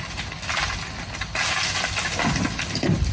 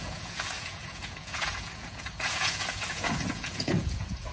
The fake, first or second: second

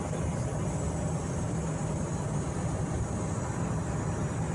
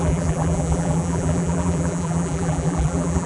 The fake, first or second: second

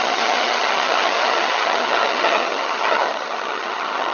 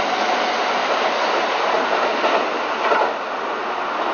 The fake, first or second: first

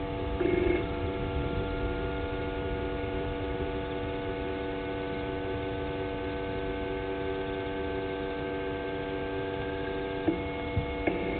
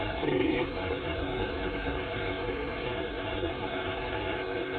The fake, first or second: second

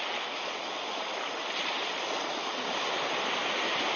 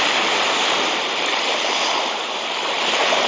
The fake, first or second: second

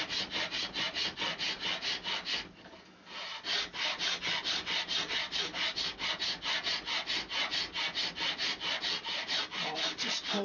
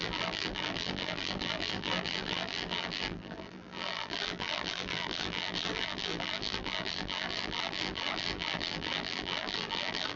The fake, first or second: second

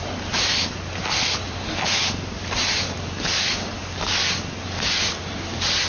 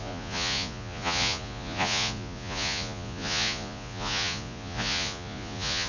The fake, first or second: second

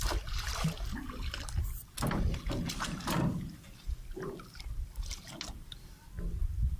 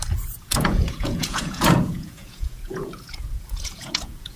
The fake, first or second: second